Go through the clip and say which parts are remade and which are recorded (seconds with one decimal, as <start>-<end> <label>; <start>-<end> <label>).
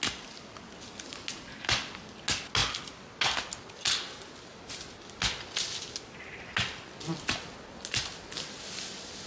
0.0-9.3 recorded